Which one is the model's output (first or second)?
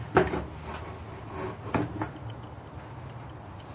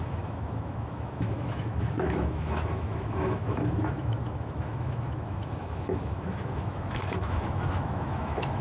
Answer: second